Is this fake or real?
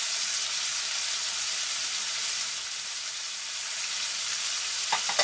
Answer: real